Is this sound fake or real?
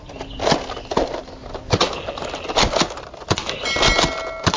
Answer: real